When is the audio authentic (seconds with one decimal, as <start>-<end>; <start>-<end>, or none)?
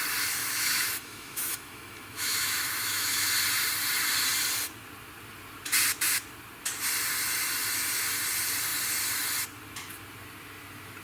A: 0.0-0.4; 3.3-11.0